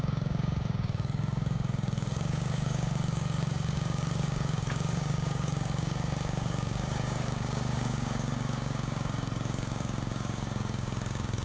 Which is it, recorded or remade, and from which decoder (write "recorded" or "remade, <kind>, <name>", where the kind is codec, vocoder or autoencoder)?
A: remade, codec, DAC